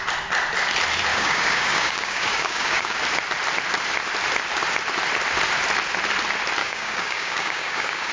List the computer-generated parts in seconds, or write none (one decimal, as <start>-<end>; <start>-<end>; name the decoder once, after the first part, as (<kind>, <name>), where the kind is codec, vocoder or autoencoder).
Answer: 1.1-3.0 (codec, DAC); 6.6-8.1